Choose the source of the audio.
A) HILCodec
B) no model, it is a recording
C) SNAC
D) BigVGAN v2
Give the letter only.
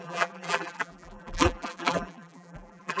D